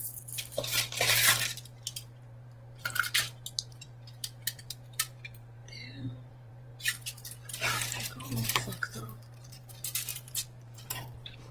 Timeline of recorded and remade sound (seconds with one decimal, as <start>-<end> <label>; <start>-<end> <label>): 0.0-6.7 remade; 6.7-8.0 recorded; 8.0-11.5 remade